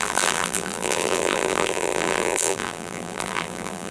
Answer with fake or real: fake